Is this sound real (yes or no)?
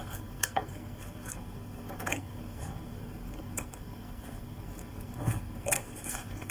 no